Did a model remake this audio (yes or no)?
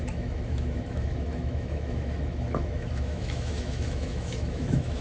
yes